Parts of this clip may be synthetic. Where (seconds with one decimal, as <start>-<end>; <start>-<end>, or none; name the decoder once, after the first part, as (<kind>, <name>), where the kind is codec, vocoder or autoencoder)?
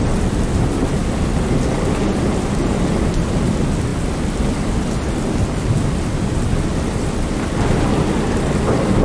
none